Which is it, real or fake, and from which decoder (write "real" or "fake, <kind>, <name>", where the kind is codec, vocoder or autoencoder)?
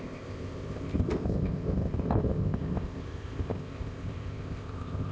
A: fake, codec, ZipCodec